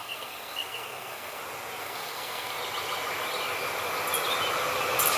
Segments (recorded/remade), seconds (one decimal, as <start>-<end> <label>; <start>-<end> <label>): 0.0-1.4 remade; 1.4-1.8 recorded; 1.8-2.6 remade; 2.6-5.2 recorded